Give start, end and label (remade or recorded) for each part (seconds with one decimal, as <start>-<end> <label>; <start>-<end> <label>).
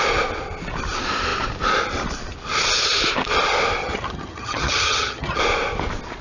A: 0.0-3.8 recorded; 3.8-5.4 remade; 5.4-6.2 recorded